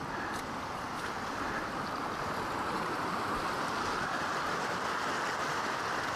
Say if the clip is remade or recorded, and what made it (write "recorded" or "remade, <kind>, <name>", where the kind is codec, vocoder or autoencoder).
recorded